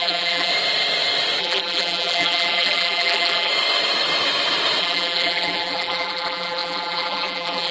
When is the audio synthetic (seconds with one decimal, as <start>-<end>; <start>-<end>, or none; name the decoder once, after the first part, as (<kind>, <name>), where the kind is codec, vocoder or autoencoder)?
0.0-0.5 (vocoder, BigVGAN v2); 1.4-3.5; 4.8-7.7